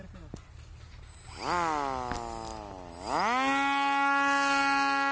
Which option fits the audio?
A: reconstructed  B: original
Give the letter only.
B